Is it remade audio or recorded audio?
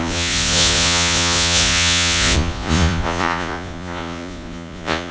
remade